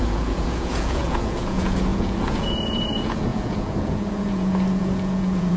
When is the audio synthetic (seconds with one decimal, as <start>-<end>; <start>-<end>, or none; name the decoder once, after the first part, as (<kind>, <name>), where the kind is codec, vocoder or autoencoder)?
0.0-5.6 (vocoder, Vocos)